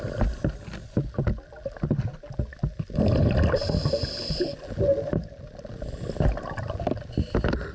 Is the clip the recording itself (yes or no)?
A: yes